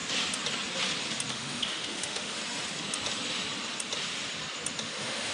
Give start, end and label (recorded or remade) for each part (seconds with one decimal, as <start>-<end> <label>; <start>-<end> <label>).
0.0-1.3 recorded; 1.3-2.4 remade; 2.4-4.8 recorded; 4.8-5.3 remade